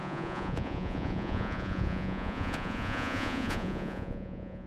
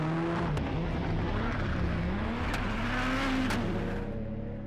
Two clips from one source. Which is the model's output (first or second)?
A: first